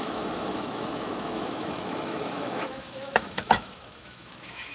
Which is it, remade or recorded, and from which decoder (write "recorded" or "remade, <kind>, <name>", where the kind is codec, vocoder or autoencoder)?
remade, autoencoder, DAC-VAE